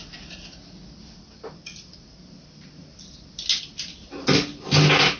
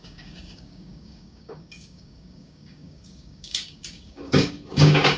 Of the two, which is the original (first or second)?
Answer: first